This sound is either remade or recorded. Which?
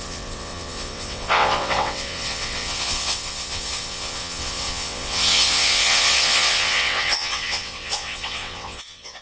remade